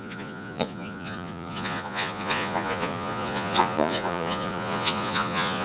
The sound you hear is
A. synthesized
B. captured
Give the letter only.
A